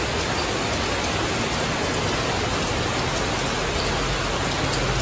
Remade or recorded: recorded